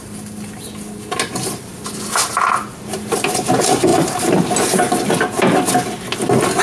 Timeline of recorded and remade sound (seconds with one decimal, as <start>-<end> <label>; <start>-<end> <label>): 0.0-6.6 recorded